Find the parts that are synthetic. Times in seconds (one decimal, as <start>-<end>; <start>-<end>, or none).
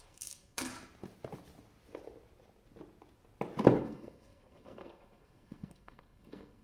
0.0-0.7; 3.8-6.6